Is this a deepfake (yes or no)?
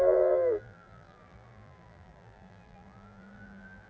yes